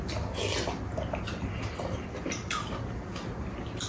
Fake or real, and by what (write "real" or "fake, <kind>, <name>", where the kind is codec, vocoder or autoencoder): real